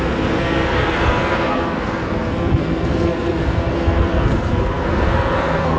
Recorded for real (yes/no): no